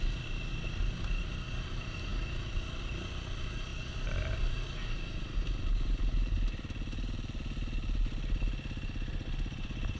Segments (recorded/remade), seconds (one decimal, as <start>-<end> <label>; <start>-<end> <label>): 0.0-10.0 recorded